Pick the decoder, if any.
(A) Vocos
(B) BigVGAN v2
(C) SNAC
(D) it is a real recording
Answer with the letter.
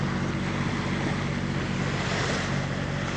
D